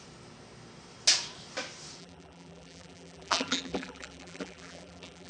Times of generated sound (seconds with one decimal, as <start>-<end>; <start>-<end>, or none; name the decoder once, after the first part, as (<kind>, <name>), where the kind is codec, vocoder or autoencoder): 2.0-5.3 (vocoder, BigVGAN v2)